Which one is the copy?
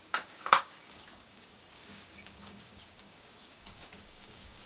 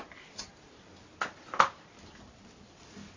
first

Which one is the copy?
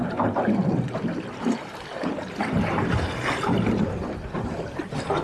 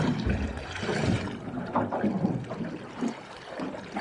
first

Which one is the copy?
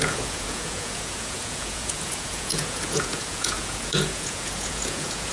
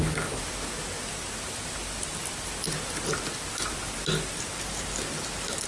first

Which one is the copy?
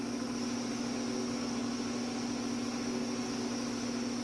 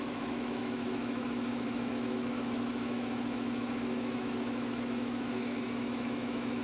second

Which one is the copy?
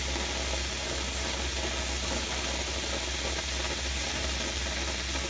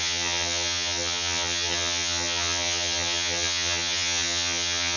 second